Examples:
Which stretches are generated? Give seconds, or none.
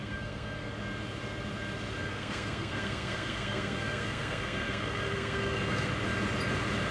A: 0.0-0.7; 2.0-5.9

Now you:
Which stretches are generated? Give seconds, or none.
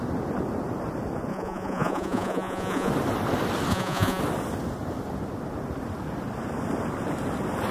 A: 1.3-2.9; 3.7-4.2